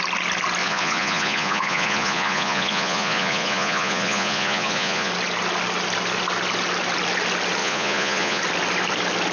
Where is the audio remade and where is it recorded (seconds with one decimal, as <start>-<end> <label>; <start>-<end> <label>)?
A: 0.0-0.6 recorded; 0.6-5.1 remade; 5.1-7.6 recorded; 7.6-8.4 remade; 8.4-9.3 recorded